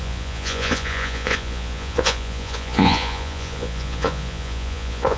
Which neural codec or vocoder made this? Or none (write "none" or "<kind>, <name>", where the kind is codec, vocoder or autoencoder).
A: vocoder, Vocos